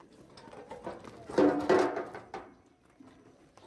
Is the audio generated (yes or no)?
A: no